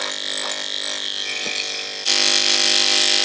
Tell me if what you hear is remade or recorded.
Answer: recorded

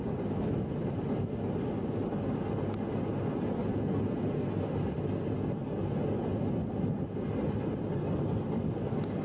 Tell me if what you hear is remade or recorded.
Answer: recorded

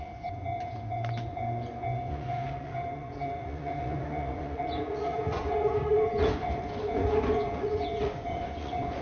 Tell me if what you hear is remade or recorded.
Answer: remade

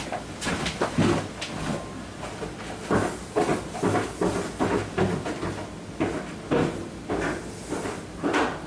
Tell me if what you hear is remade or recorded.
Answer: recorded